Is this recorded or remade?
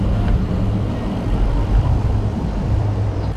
remade